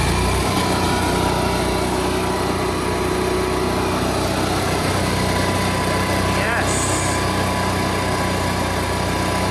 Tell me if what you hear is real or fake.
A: real